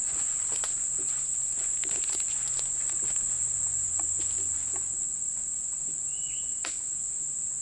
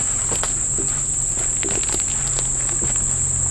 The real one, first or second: second